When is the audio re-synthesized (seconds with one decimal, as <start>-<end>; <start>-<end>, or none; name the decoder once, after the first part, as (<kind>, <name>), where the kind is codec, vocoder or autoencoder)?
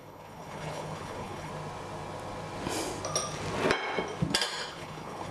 0.0-1.5 (codec, HILCodec); 4.7-5.3